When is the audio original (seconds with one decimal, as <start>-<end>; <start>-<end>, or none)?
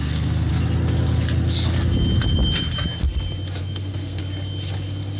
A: 0.5-3.6; 4.2-5.2